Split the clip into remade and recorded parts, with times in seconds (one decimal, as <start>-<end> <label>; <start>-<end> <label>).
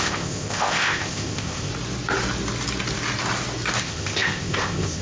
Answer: 0.0-1.7 remade; 1.7-3.8 recorded; 3.8-5.0 remade